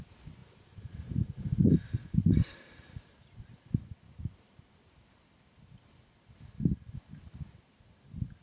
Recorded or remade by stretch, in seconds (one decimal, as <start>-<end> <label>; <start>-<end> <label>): 0.0-0.4 recorded; 0.4-3.5 remade; 3.5-8.4 recorded